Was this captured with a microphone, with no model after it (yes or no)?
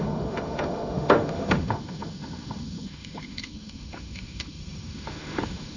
no